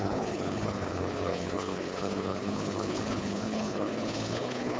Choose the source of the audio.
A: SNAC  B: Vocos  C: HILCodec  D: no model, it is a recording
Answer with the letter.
C